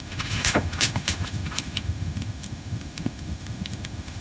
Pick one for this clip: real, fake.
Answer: fake